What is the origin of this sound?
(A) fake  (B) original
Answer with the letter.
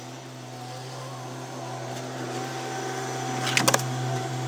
B